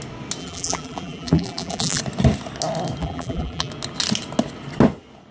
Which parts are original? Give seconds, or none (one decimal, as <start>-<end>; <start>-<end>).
0.0-0.4; 2.0-3.0; 3.7-5.3